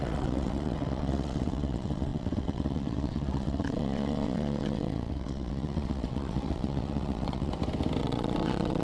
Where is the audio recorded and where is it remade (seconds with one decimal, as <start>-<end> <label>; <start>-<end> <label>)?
0.0-7.5 remade; 7.5-8.0 recorded; 8.0-8.8 remade